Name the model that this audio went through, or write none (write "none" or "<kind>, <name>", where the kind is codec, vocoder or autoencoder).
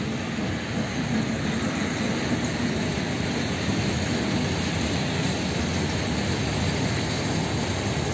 none